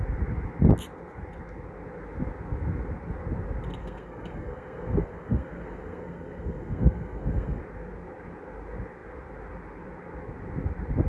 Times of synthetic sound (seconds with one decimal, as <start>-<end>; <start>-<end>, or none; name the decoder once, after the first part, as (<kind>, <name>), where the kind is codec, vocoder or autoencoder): 3.8-7.6 (codec, SNAC)